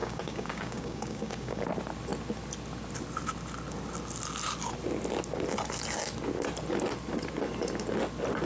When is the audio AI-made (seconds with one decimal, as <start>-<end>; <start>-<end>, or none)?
0.0-1.6